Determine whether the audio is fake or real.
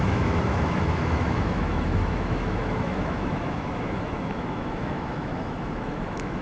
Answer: fake